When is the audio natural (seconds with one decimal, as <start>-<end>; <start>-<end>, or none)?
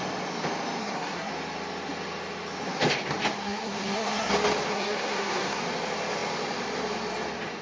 0.0-0.8; 1.3-3.4; 4.3-4.7; 5.6-7.6